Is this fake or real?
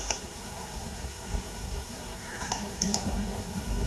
fake